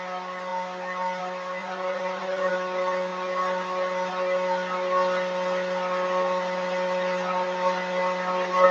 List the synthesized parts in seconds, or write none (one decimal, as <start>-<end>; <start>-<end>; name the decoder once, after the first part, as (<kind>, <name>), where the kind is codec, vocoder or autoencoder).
1.6-2.5 (vocoder, Vocos)